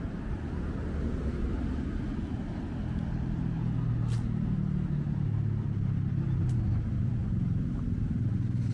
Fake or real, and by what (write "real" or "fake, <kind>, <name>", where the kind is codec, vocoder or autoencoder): real